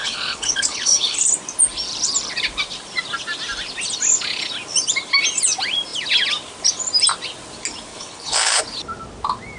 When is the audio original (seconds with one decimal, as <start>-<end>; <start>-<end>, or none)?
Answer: 1.3-7.9; 8.6-9.6